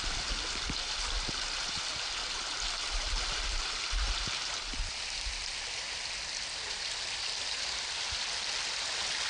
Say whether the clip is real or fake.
real